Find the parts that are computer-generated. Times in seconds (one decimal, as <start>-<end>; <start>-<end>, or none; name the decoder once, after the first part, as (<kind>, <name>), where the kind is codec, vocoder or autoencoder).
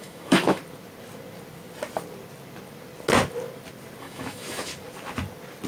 0.0-0.6 (autoencoder, DAC-VAE); 4.0-4.7